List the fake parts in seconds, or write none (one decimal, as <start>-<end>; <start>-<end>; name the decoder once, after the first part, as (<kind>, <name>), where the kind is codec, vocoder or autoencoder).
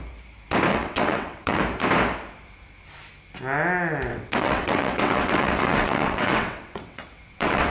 0.7-1.6 (vocoder, WaveNeXt); 4.1-7.7